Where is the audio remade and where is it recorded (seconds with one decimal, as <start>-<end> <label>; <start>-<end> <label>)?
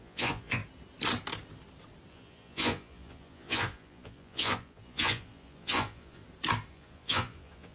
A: 0.0-0.6 remade; 0.6-2.1 recorded; 2.1-6.2 remade; 6.2-6.7 recorded; 6.7-7.7 remade